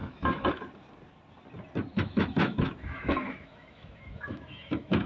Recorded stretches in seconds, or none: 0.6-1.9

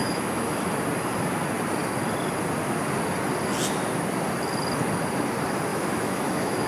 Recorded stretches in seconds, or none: 0.6-5.7

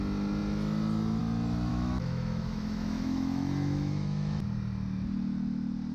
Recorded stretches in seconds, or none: 0.0-1.7; 4.4-5.9